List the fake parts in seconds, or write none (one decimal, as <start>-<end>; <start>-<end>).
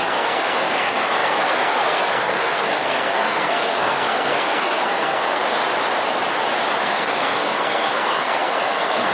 0.0-5.4; 6.8-9.1